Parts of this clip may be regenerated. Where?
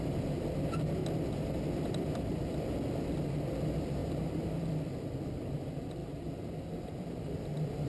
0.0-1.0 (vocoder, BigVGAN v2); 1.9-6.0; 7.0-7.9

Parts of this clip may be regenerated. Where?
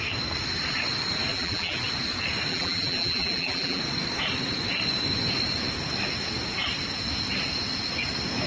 1.3-1.8 (vocoder, BigVGAN v2); 2.5-3.8